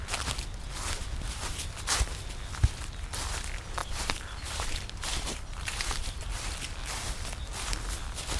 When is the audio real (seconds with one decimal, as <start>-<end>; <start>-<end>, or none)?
0.0-3.8; 6.2-8.4